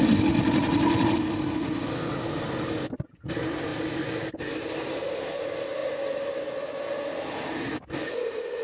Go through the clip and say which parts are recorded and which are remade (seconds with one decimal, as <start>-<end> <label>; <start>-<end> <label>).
0.0-8.6 recorded